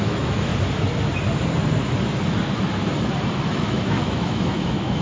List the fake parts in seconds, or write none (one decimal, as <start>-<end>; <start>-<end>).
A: 0.0-0.5; 3.5-5.0